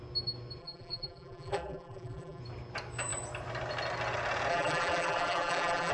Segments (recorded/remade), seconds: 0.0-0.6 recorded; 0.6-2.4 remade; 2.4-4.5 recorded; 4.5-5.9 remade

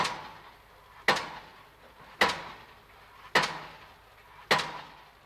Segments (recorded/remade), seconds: 0.0-5.3 recorded